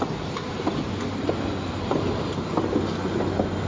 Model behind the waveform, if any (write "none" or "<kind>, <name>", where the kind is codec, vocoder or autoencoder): none